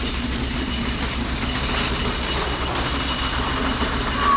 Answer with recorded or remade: recorded